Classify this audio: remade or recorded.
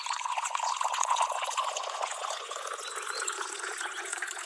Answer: remade